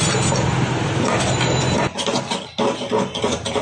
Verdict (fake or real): real